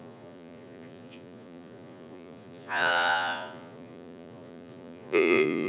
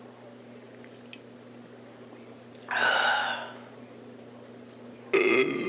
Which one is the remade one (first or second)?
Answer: first